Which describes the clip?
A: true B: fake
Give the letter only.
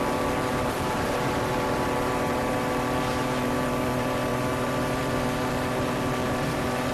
B